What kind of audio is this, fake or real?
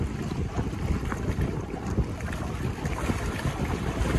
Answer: real